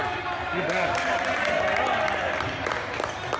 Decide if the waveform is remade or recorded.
recorded